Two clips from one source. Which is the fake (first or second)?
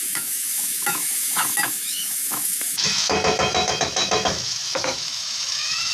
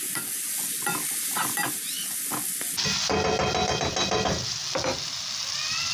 first